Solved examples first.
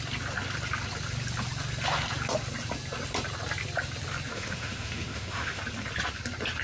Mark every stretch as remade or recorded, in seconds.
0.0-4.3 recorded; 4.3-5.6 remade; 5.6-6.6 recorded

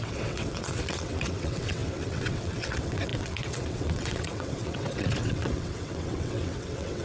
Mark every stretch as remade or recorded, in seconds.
0.0-7.0 remade